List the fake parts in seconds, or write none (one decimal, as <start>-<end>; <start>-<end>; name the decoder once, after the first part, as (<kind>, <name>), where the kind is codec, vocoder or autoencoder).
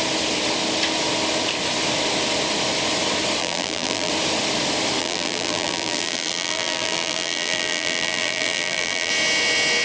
3.4-4.1 (vocoder, BigVGAN v2); 5.0-9.1